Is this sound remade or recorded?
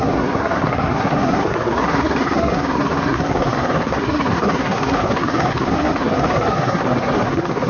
remade